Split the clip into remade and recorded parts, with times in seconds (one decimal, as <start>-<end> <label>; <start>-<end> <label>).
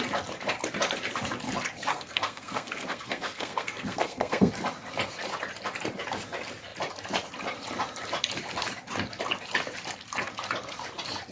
0.0-1.9 recorded; 1.9-4.5 remade; 4.5-11.3 recorded